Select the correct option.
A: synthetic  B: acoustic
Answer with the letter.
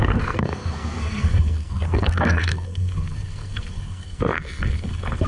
A